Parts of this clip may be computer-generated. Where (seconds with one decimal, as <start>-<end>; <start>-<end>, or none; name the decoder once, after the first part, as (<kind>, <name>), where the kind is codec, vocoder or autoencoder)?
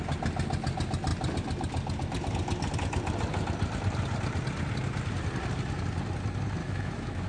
6.6-7.3 (autoencoder, DAC-VAE)